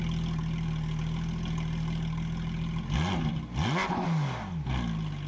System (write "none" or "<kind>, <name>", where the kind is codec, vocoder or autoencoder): none